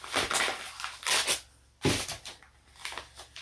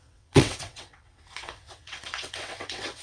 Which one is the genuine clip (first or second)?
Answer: first